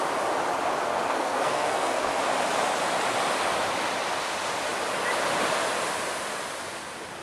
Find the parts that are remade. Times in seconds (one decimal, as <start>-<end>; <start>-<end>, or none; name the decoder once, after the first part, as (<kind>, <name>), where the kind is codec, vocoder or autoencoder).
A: 0.9-2.1 (codec, SNAC)